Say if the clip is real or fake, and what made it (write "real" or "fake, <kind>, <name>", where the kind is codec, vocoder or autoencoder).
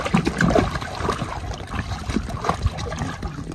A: real